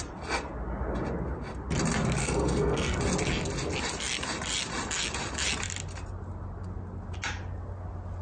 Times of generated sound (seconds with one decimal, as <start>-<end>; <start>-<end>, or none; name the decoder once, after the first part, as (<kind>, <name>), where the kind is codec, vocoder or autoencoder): 2.2-3.0 (codec, SNAC)